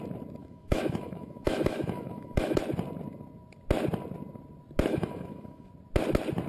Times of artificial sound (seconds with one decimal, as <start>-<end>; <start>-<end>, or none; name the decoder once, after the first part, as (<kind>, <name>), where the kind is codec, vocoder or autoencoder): 0.4-2.6 (autoencoder, DAC-VAE); 4.9-5.7